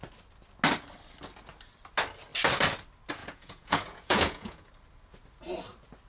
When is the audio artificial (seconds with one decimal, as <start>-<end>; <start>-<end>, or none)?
3.2-4.7